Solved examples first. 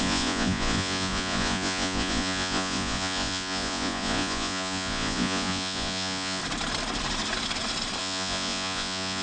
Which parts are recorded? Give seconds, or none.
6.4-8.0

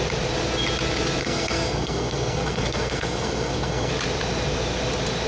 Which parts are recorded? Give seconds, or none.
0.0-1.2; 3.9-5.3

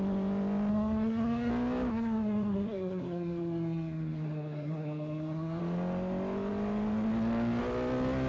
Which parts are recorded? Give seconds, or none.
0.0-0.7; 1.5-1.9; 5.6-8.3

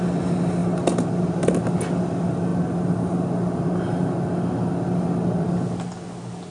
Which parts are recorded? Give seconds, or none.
0.0-6.5

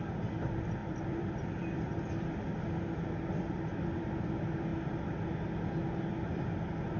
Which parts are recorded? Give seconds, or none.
0.0-0.8; 2.1-2.5; 4.3-7.0

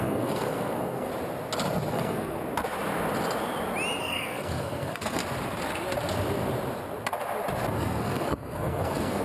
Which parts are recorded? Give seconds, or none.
1.1-1.9; 2.4-4.0; 5.2-7.7

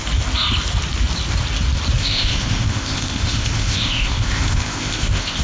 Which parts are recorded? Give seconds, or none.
0.0-2.0